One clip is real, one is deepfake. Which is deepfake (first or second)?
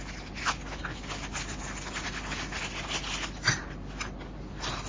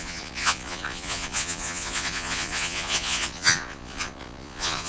second